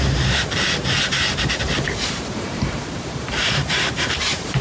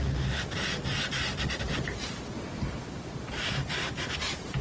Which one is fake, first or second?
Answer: first